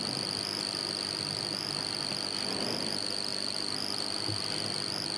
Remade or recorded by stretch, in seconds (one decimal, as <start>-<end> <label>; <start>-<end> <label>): 0.0-3.3 recorded; 3.3-4.4 remade; 4.4-5.2 recorded